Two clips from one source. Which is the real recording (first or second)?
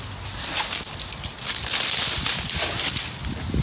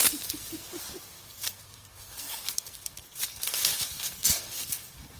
first